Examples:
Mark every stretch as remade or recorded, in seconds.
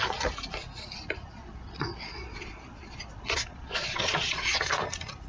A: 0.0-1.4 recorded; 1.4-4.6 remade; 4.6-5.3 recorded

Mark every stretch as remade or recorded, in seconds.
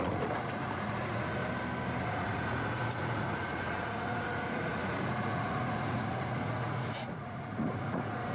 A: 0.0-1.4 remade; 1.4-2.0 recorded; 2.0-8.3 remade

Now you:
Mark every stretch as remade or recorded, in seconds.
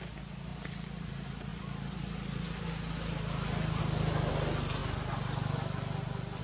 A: 0.0-6.4 recorded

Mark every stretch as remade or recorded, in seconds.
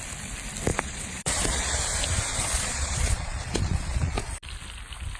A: 0.0-0.7 recorded; 0.7-1.8 remade; 1.8-2.3 recorded; 2.3-4.3 remade; 4.3-5.2 recorded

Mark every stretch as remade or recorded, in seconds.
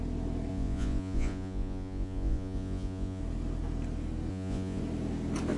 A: 0.0-0.5 recorded; 0.5-3.2 remade; 3.2-4.3 recorded; 4.3-4.8 remade; 4.8-5.6 recorded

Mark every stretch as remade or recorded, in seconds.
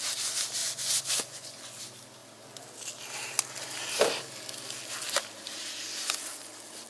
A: 0.0-0.6 recorded; 0.6-1.8 remade; 1.8-6.9 recorded